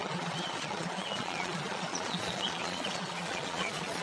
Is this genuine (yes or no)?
no